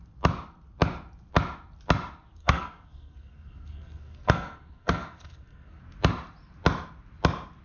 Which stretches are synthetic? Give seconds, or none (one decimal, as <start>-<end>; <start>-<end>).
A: 2.4-5.8